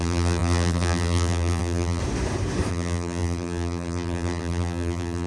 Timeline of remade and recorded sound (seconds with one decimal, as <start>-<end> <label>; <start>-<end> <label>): 0.0-2.0 remade; 2.0-2.7 recorded; 2.7-5.3 remade